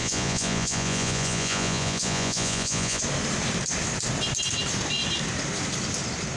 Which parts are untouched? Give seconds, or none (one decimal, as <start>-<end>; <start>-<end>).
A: 3.0-6.4